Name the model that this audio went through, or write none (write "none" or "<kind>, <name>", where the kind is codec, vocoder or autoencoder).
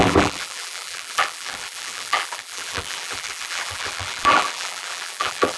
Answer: vocoder, BigVGAN v2